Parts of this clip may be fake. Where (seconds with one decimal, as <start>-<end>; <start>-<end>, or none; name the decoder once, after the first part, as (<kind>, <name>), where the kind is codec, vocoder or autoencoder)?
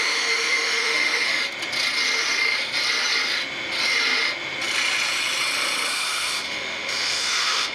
0.0-1.4 (autoencoder, DAC-VAE); 5.9-7.7